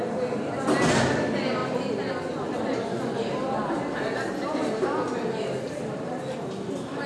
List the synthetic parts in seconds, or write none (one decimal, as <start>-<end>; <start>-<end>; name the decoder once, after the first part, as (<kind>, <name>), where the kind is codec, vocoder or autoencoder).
none

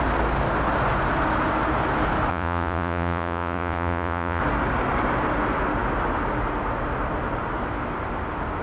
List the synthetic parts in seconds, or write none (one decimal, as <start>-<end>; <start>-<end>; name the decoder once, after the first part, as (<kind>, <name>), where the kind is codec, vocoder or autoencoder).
2.3-4.4 (vocoder, Vocos)

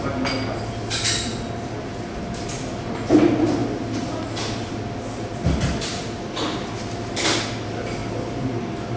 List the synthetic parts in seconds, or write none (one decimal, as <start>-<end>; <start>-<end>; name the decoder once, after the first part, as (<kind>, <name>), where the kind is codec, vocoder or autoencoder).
none

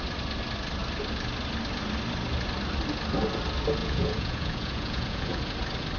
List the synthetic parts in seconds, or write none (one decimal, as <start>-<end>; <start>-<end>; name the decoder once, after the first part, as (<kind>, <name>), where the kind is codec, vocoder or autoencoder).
3.8-5.4 (vocoder, Vocos)

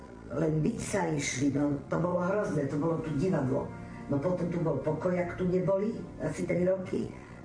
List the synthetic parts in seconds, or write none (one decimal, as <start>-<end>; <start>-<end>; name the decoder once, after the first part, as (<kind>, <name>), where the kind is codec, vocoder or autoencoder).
0.0-2.1 (vocoder, Vocos); 6.4-7.4

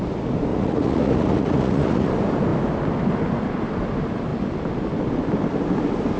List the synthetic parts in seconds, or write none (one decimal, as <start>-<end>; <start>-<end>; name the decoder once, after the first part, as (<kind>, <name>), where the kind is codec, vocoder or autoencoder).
0.5-2.1 (vocoder, Vocos)

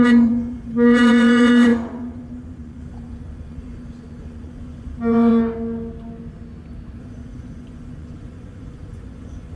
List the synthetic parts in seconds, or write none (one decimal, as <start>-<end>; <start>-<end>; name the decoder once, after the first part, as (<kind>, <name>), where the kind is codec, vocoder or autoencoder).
0.0-5.3 (vocoder, Vocos); 7.0-9.6

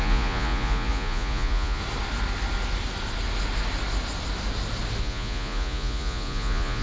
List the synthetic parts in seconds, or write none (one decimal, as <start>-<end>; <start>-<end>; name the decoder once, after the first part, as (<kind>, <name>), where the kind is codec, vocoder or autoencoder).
0.0-1.8 (vocoder, Vocos); 5.0-6.8